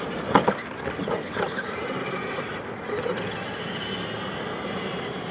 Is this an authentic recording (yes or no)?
yes